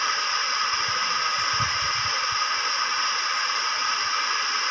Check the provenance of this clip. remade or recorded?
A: recorded